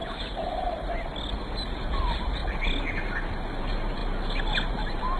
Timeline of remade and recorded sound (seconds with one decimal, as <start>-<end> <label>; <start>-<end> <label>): 0.0-1.3 recorded; 1.3-2.4 remade; 2.4-3.6 recorded; 3.6-4.0 remade; 4.0-4.7 recorded; 4.7-5.2 remade